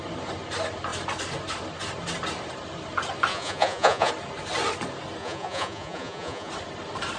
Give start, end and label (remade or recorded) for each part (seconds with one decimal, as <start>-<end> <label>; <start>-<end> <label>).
0.0-3.3 recorded; 3.3-4.1 remade; 4.1-5.2 recorded; 5.2-6.5 remade; 6.5-7.2 recorded